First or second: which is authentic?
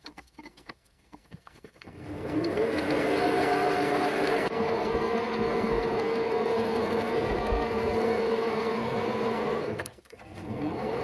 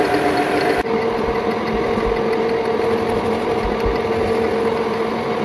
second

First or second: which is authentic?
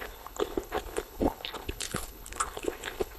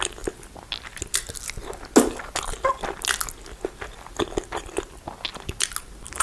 second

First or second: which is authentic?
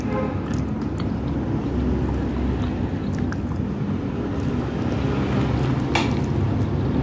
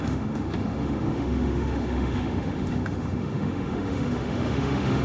first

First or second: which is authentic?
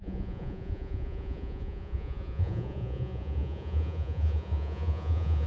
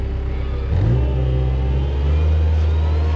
second